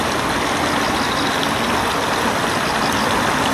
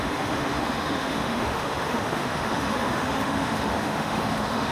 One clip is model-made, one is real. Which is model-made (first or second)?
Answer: second